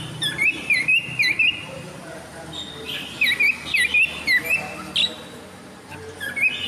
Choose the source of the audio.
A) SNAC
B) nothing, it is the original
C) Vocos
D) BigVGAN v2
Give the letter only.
B